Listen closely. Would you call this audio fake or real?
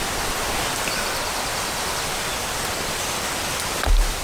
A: real